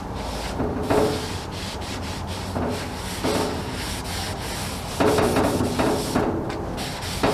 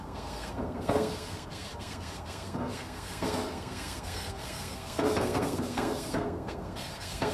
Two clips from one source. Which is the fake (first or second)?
second